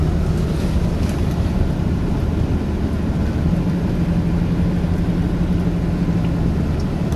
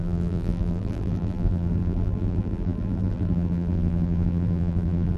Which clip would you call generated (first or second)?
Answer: second